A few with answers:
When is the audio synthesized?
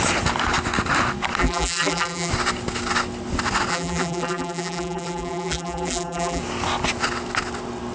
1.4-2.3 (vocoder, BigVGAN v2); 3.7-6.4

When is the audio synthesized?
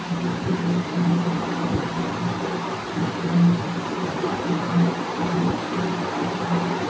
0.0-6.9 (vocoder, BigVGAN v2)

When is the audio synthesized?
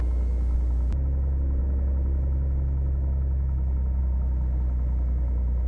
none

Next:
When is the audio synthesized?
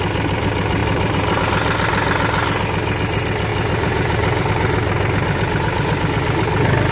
0.8-1.4 (vocoder, BigVGAN v2); 3.5-4.5